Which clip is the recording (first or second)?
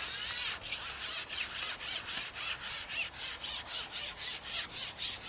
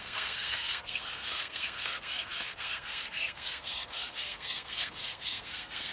first